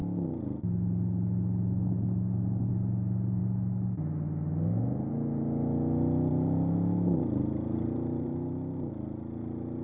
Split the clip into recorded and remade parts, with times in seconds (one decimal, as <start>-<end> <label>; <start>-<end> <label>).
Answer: 0.0-6.3 recorded; 6.3-8.9 remade; 8.9-9.8 recorded